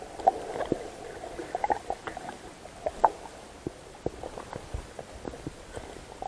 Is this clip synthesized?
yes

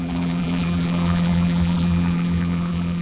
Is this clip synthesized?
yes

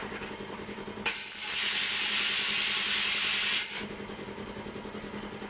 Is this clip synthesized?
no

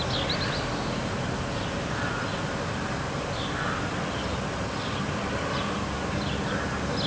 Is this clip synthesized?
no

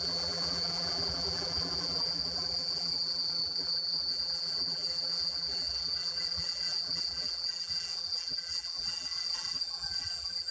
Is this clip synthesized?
yes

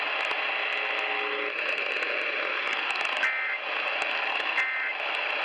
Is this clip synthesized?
no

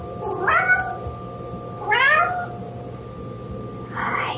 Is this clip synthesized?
no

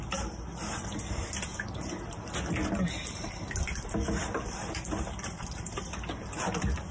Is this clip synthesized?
no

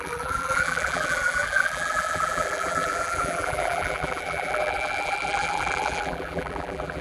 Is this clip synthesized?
yes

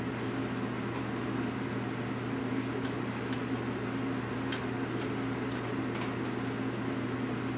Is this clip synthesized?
no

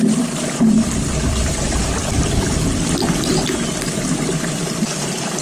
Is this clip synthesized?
yes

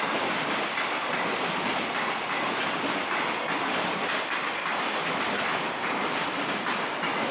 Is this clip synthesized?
yes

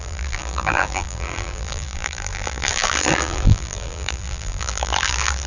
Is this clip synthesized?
yes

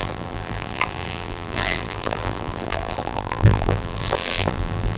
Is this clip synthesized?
yes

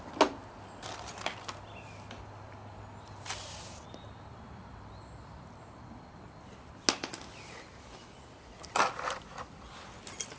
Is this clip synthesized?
no